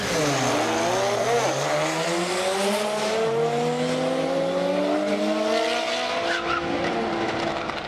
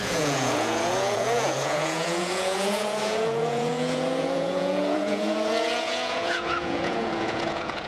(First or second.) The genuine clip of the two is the first